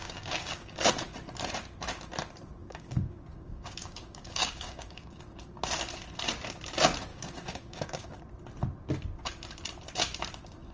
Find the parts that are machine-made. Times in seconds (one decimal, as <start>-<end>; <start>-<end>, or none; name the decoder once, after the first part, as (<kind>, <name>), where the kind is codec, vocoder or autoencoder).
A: 0.0-0.9 (codec, DAC); 2.6-5.2; 7.1-8.2